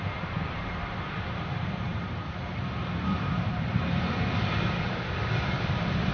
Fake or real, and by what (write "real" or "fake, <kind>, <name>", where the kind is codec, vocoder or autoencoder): fake, vocoder, BigVGAN v2